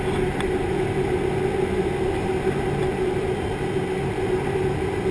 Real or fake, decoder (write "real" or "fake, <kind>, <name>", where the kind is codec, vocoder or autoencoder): real